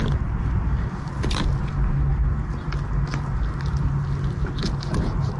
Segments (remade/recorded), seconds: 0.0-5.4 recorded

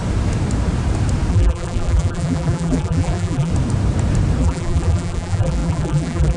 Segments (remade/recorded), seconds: 0.0-1.3 recorded; 1.3-3.5 remade; 3.5-4.4 recorded; 4.4-6.4 remade

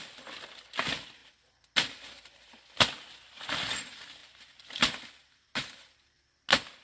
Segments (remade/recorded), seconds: 0.0-6.8 recorded

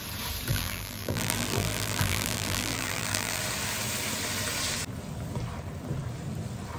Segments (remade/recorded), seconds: 0.0-0.5 recorded; 0.5-3.4 remade; 3.4-6.8 recorded